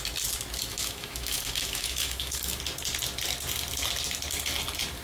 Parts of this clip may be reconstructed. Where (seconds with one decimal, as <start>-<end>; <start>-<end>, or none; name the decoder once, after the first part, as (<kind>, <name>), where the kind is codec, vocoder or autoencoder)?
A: 0.7-2.6 (autoencoder, DAC-VAE)